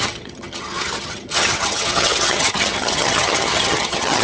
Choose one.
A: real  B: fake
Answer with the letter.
B